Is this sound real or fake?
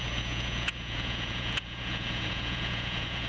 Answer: fake